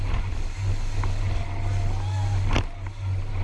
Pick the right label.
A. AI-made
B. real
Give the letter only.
B